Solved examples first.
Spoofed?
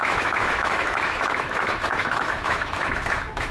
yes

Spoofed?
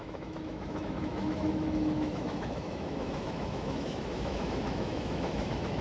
yes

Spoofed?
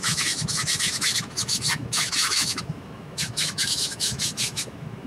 yes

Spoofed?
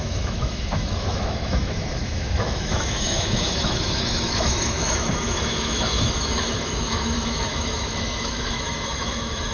yes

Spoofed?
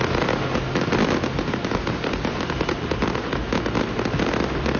no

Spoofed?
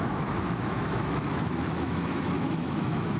yes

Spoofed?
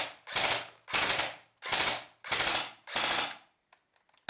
no